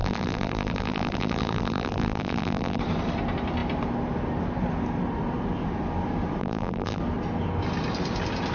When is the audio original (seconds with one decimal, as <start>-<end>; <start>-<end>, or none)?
2.8-6.4; 7.0-8.5